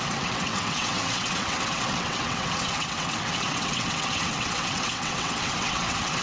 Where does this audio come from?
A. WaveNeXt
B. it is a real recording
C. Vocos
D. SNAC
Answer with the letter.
A